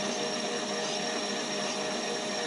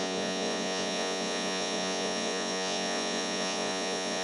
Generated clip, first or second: second